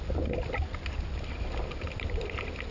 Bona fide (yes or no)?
yes